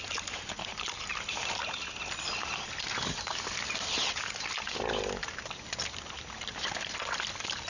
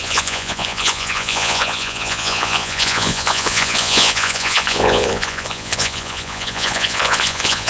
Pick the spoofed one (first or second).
second